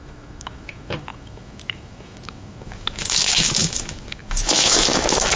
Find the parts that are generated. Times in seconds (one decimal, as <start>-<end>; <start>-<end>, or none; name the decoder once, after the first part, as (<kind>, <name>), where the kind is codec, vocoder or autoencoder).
0.0-5.4 (autoencoder, DAC-VAE)